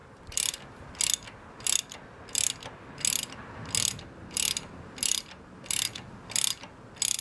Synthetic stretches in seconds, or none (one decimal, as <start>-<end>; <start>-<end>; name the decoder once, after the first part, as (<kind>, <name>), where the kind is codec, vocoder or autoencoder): none